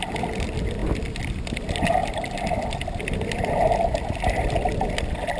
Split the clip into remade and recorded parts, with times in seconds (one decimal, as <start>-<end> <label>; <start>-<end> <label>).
0.0-5.4 remade